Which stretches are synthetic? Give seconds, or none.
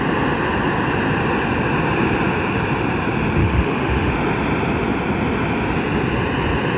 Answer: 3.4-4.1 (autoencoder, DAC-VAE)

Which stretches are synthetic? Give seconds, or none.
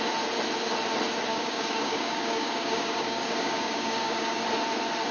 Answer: 1.3-4.4 (codec, DAC)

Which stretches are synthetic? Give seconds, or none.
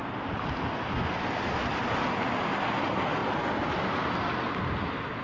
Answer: none